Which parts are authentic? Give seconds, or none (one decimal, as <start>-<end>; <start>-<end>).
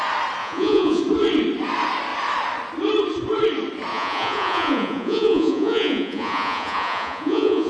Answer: 0.0-0.4; 1.0-3.9